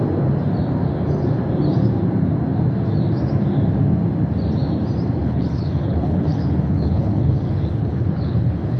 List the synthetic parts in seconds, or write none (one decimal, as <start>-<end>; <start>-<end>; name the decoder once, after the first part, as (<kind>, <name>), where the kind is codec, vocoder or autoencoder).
5.2-8.8 (codec, HILCodec)